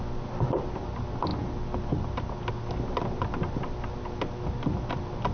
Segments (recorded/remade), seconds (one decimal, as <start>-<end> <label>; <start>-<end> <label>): 0.0-5.3 recorded